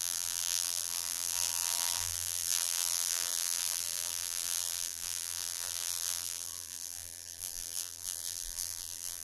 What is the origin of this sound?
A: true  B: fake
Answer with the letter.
B